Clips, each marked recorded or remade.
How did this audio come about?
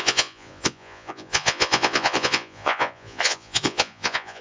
remade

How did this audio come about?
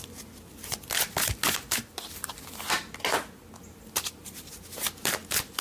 recorded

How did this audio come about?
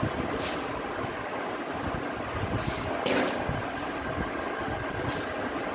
recorded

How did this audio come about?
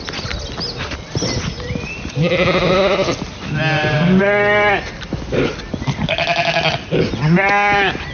recorded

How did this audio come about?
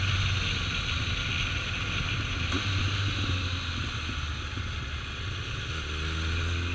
recorded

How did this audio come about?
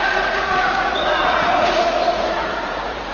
remade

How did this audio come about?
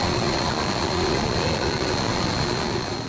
remade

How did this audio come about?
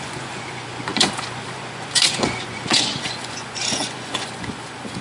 remade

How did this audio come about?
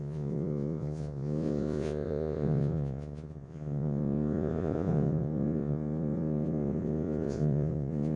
remade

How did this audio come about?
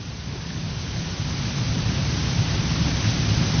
recorded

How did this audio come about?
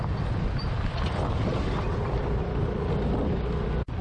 recorded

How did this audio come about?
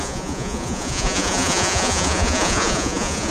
remade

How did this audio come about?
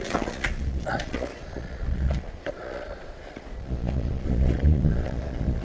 remade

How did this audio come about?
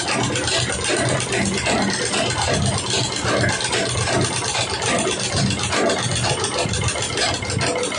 recorded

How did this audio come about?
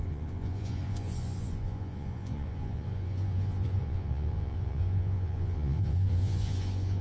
remade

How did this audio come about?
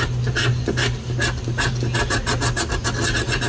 recorded